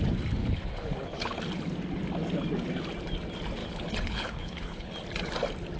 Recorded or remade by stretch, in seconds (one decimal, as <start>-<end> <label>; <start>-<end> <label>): 0.0-0.4 recorded; 0.4-1.4 remade; 1.4-3.6 recorded; 3.6-4.9 remade; 4.9-5.8 recorded